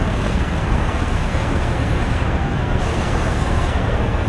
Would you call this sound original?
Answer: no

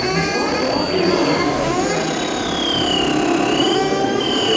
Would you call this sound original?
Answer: yes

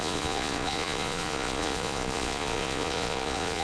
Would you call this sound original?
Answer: no